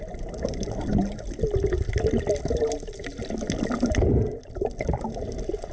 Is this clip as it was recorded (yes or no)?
yes